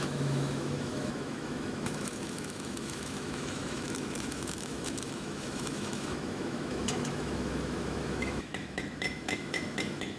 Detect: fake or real fake